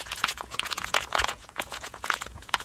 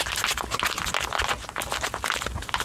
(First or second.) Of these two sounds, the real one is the second